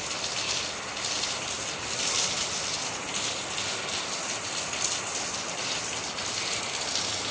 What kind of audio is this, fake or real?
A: real